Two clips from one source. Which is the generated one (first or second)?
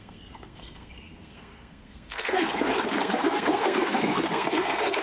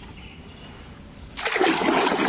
first